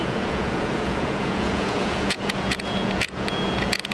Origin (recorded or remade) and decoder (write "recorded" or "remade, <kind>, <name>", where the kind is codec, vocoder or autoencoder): remade, vocoder, Vocos